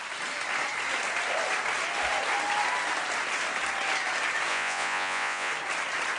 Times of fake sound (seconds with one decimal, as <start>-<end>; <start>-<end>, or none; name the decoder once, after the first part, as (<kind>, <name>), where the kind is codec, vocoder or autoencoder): 4.5-5.5 (vocoder, Vocos)